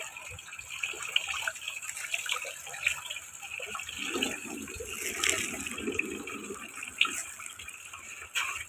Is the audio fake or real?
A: real